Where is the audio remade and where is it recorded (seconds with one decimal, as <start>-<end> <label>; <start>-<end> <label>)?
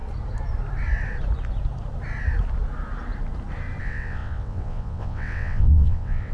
0.0-3.8 recorded; 3.8-6.3 remade